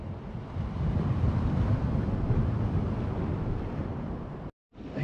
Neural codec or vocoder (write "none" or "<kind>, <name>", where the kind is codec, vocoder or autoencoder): none